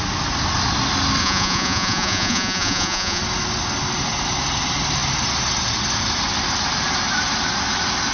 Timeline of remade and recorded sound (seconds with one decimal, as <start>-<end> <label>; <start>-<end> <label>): 0.0-1.2 recorded; 1.2-3.2 remade; 3.2-8.1 recorded